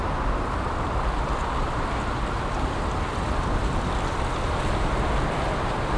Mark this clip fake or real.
real